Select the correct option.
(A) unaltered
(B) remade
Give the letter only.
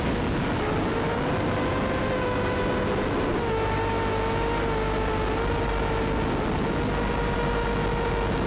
A